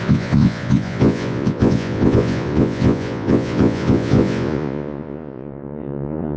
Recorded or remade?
remade